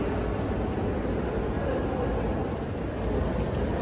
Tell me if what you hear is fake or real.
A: real